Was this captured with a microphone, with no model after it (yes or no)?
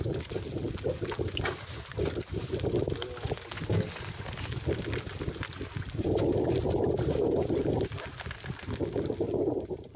yes